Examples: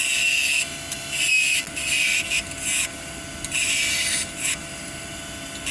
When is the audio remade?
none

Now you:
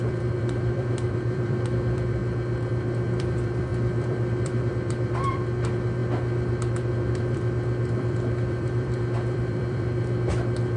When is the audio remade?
0.0-2.2 (vocoder, BigVGAN v2); 2.7-6.0; 6.7-10.8

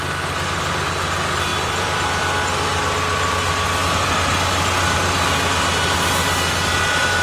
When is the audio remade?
1.5-2.2 (vocoder, BigVGAN v2)

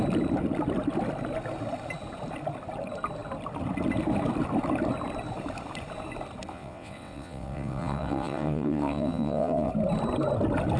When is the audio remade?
6.5-9.7 (vocoder, WaveNeXt)

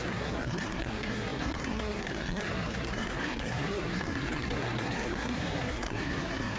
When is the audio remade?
0.0-6.6 (codec, SNAC)

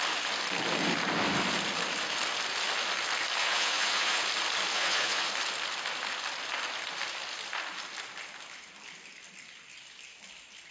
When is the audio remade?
3.4-4.2 (vocoder, Vocos); 4.7-5.3

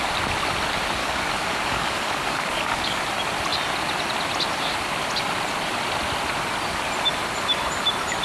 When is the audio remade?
1.0-3.0 (codec, DAC)